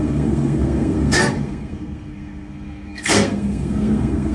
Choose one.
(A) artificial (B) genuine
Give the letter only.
A